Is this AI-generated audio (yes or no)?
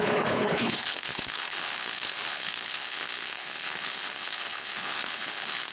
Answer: yes